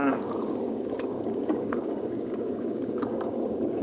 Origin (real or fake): fake